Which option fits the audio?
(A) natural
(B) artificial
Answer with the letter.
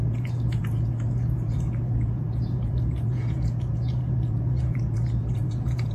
B